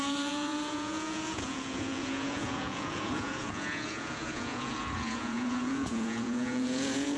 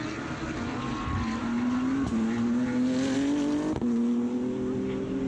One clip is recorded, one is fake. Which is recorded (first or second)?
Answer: second